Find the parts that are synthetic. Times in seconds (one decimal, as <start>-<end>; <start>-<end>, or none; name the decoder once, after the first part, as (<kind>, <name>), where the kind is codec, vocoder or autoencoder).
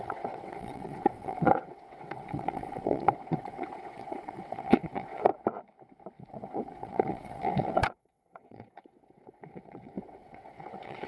0.0-5.3 (vocoder, WaveNeXt); 6.3-11.1